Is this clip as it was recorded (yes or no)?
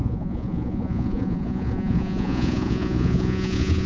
no